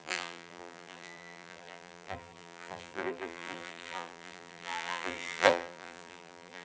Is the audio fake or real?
fake